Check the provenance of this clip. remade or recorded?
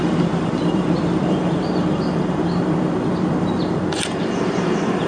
remade